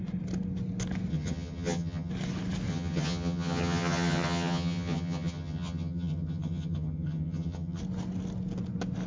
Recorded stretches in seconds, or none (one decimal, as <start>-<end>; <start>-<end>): 0.0-1.1; 2.1-2.7; 7.8-9.1